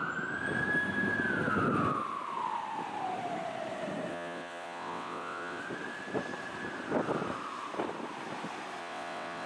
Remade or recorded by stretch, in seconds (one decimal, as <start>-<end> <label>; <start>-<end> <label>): 0.0-4.1 recorded; 4.1-5.6 remade; 5.6-8.8 recorded; 8.8-9.5 remade